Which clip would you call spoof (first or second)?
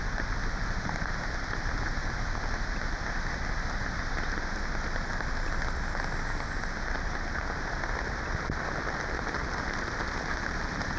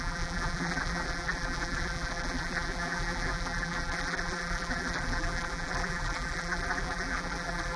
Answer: second